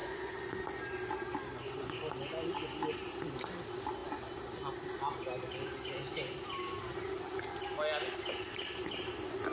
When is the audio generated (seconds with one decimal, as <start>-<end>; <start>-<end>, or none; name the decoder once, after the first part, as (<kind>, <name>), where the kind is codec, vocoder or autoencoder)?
0.0-0.6 (vocoder, Vocos); 1.5-2.0